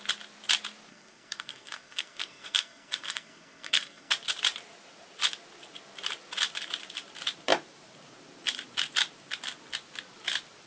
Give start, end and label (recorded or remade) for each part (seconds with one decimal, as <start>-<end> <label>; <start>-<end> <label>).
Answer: 0.0-0.9 recorded; 0.9-4.1 remade; 4.1-10.7 recorded